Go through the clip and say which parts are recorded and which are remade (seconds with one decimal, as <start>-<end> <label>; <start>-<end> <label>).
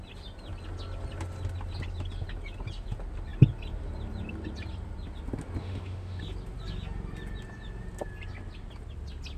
0.0-5.6 recorded; 5.6-6.2 remade; 6.2-9.4 recorded